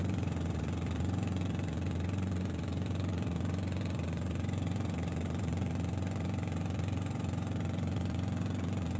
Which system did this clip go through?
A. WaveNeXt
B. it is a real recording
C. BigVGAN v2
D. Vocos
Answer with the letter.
D